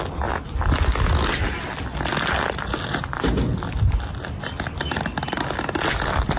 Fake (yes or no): no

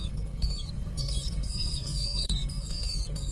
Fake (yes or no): yes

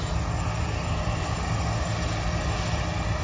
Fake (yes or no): no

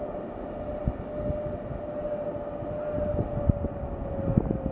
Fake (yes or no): no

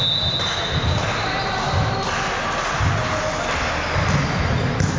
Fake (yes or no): no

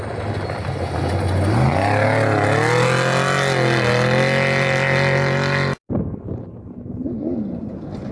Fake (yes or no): no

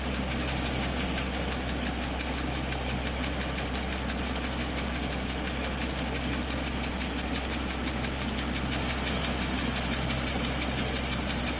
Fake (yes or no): no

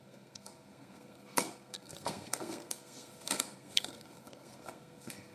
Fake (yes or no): yes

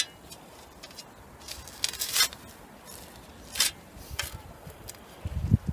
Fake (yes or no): no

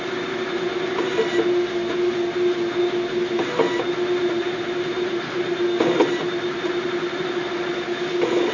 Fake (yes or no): no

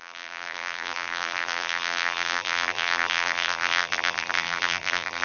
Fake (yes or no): yes